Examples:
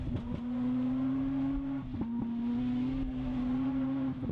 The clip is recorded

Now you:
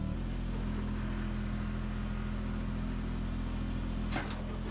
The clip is recorded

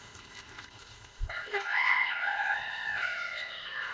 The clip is remade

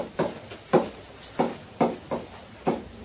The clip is recorded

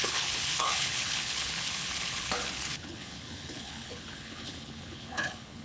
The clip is remade